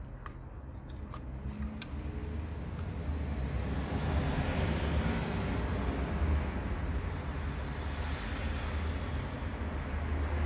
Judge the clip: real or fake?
real